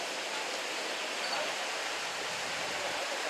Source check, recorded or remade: recorded